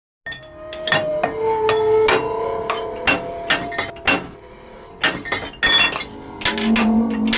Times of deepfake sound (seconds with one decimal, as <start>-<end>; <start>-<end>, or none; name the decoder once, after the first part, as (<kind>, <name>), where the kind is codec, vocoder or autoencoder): none